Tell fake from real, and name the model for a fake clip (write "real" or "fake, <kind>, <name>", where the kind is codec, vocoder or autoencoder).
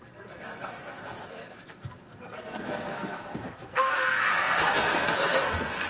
fake, codec, SNAC